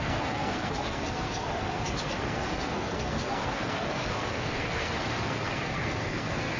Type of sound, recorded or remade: remade